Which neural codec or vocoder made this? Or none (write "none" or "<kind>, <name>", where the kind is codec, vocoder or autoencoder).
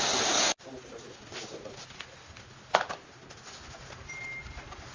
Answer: none